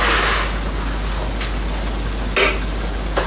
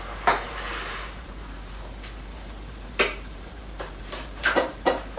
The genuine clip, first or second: first